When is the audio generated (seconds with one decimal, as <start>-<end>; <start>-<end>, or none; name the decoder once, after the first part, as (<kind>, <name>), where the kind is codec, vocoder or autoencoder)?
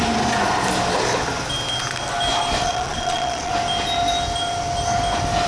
2.6-3.5 (vocoder, Vocos)